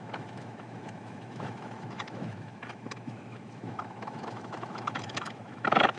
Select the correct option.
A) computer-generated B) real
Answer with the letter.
A